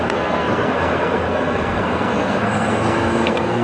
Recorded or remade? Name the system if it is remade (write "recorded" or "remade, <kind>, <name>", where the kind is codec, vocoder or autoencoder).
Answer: remade, codec, SNAC